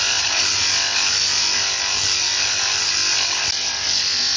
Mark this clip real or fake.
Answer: real